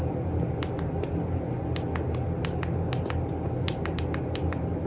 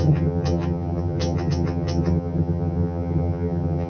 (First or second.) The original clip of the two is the first